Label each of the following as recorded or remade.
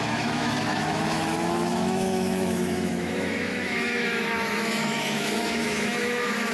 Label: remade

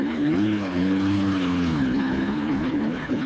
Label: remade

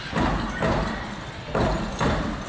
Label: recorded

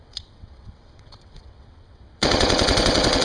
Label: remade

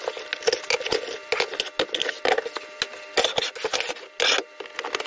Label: recorded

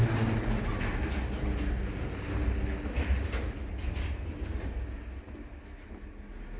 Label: recorded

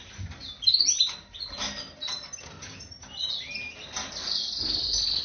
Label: recorded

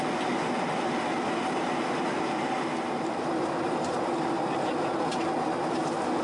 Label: recorded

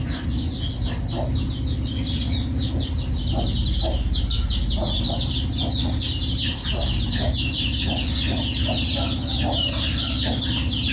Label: recorded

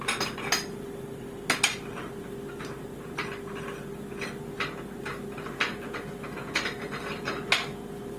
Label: recorded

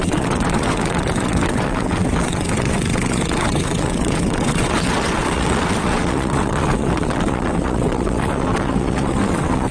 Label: remade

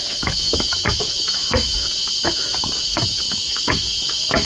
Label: remade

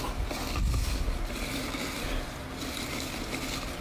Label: recorded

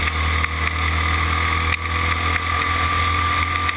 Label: recorded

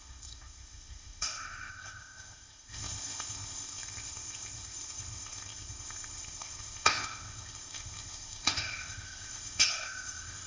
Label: remade